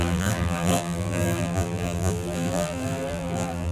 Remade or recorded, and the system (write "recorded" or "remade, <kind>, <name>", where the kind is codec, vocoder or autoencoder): remade, vocoder, BigVGAN v2